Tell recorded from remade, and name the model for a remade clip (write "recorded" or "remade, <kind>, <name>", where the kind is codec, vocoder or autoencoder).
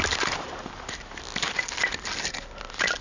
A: recorded